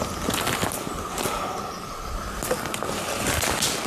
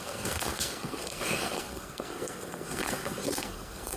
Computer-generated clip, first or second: second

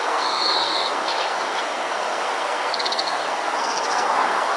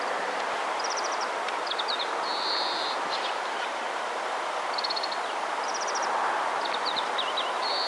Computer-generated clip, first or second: first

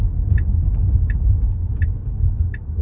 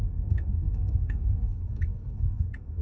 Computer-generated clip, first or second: second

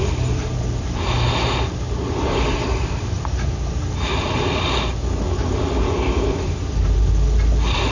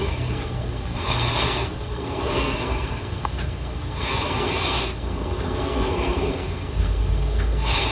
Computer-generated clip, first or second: second